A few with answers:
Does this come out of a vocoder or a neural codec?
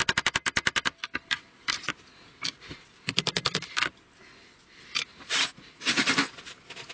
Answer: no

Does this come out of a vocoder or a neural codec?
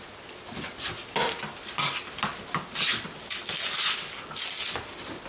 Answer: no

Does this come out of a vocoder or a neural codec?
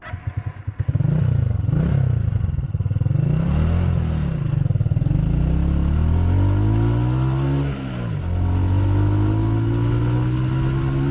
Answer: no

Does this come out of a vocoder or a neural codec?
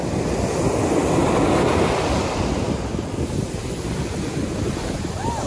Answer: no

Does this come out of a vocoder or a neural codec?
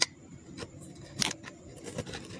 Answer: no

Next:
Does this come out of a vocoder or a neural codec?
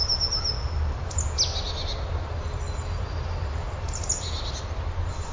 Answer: no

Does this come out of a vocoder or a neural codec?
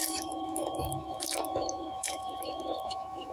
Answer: yes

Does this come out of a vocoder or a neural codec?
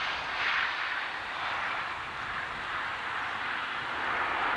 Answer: no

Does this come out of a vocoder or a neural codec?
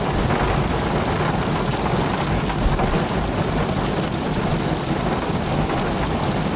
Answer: no